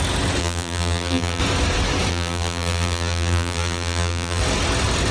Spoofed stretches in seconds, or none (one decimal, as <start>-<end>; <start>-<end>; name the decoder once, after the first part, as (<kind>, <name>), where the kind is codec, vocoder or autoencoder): 0.4-1.4 (vocoder, BigVGAN v2); 2.1-4.4